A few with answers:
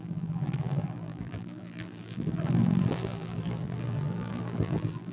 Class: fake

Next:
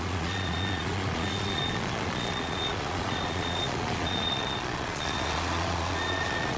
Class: fake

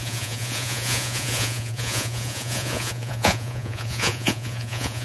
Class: fake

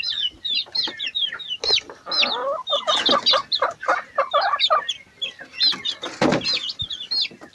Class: real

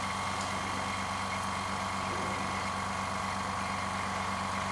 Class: real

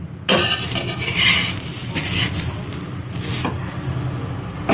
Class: real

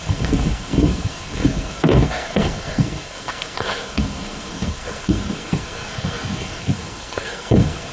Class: fake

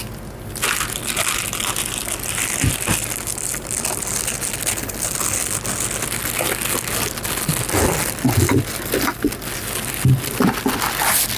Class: real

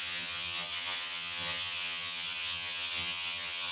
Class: fake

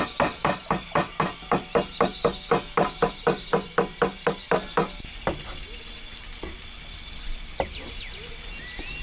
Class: real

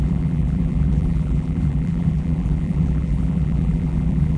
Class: fake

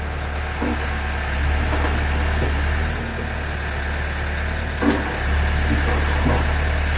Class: real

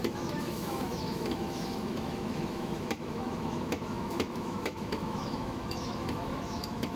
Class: fake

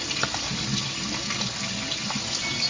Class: real